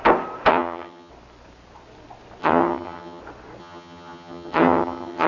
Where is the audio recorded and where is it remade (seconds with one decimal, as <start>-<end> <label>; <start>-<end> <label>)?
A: 0.0-0.5 recorded; 0.5-1.1 remade; 1.1-2.4 recorded; 2.4-3.2 remade; 3.2-3.6 recorded; 3.6-5.3 remade